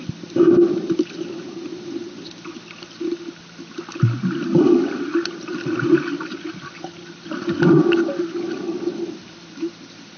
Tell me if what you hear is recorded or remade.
recorded